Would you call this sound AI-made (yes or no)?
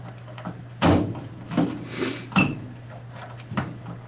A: no